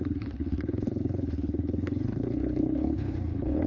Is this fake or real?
fake